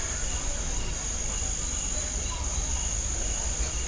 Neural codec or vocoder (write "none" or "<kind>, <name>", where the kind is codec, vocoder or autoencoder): none